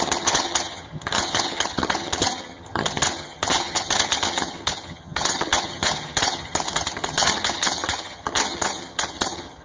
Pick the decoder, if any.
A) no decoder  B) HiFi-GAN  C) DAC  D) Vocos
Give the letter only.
B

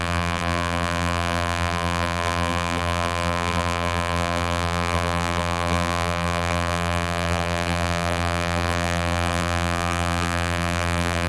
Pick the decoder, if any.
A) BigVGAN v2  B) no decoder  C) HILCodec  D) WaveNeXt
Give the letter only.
A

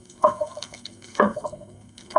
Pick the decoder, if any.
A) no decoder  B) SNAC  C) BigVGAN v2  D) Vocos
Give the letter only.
B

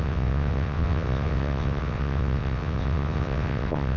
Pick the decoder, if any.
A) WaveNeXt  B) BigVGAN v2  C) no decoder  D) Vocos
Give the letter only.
A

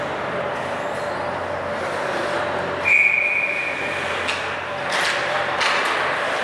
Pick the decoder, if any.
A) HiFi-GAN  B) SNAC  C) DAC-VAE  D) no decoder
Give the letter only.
D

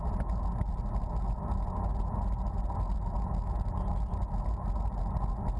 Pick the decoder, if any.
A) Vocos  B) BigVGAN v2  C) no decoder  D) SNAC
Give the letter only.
C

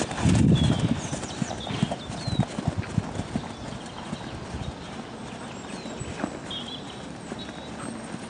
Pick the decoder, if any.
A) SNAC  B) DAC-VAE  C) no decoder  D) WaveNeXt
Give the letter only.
C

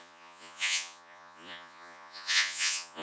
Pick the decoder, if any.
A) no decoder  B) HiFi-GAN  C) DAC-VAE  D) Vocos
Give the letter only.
D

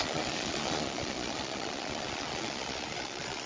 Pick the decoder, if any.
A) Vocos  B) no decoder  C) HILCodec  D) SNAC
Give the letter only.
A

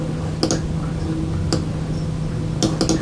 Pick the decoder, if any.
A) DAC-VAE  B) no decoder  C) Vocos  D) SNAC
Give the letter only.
B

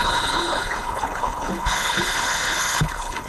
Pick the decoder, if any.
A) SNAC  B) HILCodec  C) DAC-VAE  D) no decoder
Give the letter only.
B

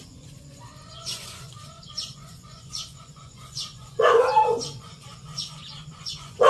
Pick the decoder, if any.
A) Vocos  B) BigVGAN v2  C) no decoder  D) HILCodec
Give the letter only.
A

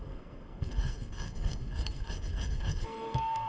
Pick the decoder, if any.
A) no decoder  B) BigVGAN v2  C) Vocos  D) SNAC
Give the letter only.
D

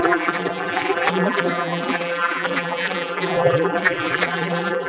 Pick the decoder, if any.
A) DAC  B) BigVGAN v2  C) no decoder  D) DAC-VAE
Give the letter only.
B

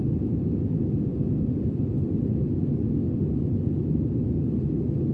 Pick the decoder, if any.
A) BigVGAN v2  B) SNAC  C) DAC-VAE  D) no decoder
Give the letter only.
D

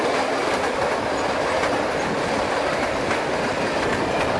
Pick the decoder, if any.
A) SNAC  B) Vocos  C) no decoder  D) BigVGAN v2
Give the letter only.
C